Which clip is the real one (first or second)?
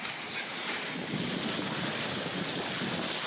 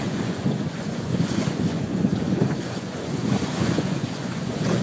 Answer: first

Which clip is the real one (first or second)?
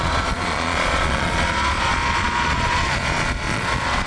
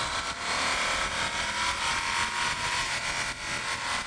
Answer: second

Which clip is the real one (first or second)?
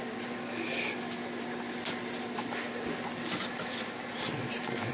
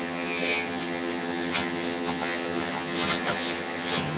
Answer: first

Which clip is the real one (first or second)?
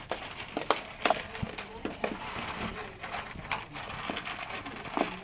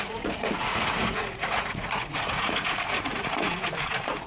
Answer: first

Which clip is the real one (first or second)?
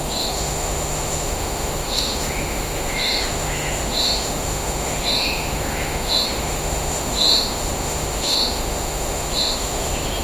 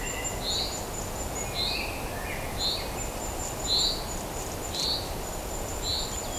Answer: second